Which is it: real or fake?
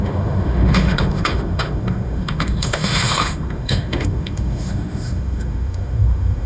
fake